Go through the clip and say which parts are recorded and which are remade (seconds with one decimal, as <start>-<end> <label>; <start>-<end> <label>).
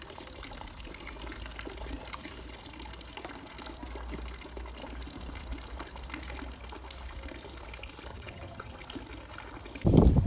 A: 0.0-8.1 recorded; 8.1-8.7 remade; 8.7-10.3 recorded